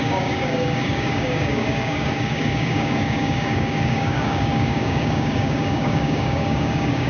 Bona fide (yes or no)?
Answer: no